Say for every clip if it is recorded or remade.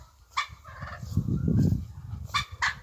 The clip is recorded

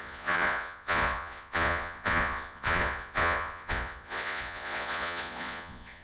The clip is remade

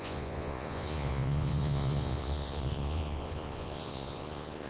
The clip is remade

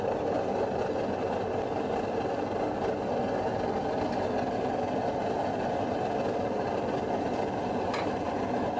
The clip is recorded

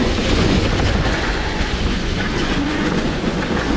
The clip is remade